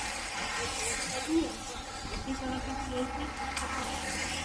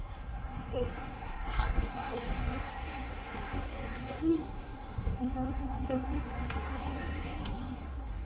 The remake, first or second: second